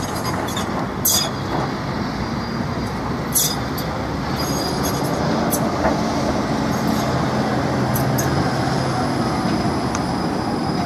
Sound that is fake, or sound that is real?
real